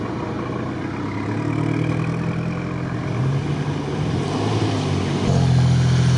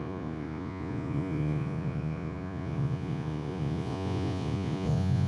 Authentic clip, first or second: first